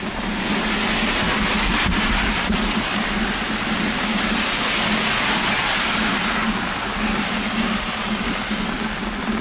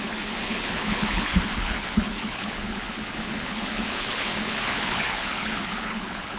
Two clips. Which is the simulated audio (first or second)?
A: second